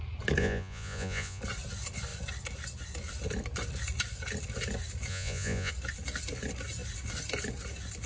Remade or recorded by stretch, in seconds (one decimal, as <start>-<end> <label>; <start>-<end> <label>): 0.0-0.4 recorded; 0.4-1.4 remade; 1.4-5.1 recorded; 5.1-5.7 remade; 5.7-8.1 recorded